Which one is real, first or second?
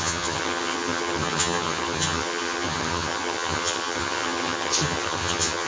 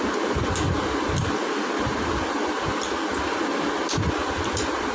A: second